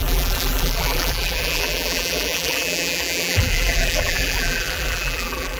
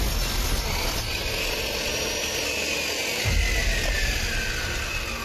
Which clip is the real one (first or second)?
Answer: second